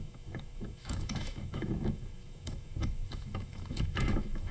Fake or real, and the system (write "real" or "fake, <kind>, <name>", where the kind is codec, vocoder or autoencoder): fake, autoencoder, DAC-VAE